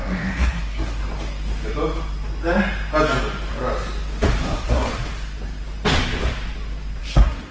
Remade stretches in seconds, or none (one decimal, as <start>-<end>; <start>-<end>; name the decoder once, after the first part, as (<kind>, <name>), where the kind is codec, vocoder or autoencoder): 0.0-1.0 (codec, SNAC); 4.4-4.9; 7.0-7.5